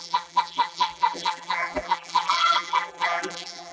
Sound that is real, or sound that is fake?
fake